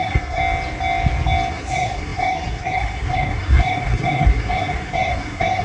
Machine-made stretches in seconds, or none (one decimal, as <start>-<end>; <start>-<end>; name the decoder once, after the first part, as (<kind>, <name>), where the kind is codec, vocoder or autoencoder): 0.0-0.4 (codec, SNAC); 1.5-5.6